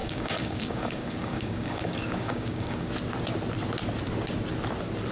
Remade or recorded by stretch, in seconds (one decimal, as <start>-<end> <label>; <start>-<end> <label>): 0.0-2.9 remade; 2.9-5.1 recorded